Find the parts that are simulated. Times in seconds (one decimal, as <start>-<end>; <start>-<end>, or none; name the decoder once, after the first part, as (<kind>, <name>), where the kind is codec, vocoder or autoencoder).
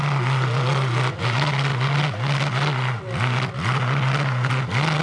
none